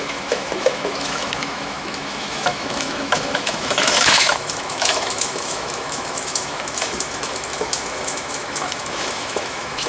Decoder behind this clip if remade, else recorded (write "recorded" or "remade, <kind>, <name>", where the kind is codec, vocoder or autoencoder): remade, autoencoder, DAC-VAE